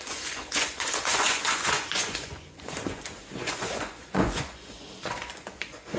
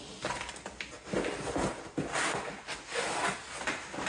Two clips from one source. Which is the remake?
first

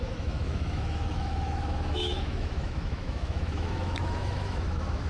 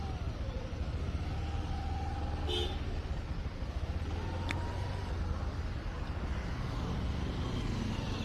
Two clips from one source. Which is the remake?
first